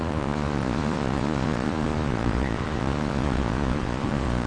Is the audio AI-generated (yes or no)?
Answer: yes